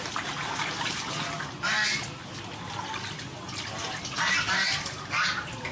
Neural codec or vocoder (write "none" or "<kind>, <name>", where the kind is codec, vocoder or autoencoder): none